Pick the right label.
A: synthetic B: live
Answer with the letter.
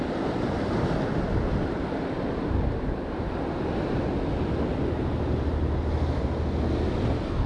B